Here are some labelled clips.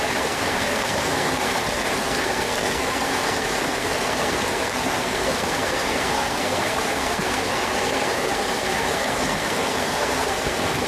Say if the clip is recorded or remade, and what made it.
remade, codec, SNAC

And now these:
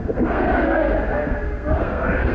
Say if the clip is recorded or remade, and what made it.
remade, codec, SNAC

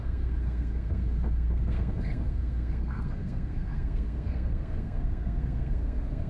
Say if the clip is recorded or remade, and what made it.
remade, codec, SNAC